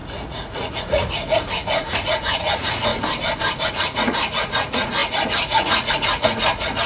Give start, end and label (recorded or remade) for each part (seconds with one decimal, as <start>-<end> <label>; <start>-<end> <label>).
0.0-2.9 remade; 2.9-3.7 recorded; 3.7-6.9 remade